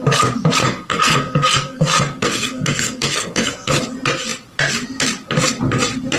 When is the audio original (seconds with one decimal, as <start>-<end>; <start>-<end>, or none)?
0.0-0.6; 3.8-6.2